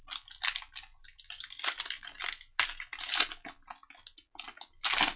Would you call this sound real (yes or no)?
yes